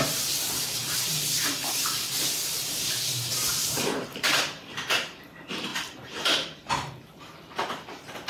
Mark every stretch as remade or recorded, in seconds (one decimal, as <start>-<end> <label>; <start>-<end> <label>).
0.0-8.3 remade